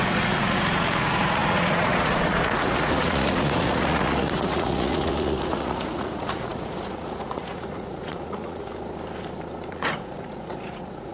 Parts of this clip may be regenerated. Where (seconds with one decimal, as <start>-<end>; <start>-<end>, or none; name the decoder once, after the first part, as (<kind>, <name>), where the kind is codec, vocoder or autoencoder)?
0.0-8.7 (vocoder, Vocos); 9.7-11.1